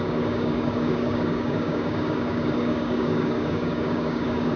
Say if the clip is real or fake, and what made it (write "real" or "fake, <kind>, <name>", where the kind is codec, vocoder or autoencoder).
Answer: fake, codec, DAC